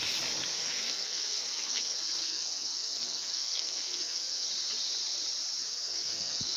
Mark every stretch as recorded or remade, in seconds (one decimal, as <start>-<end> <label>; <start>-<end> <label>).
0.0-0.5 recorded; 0.5-4.5 remade; 4.5-5.6 recorded; 5.6-6.6 remade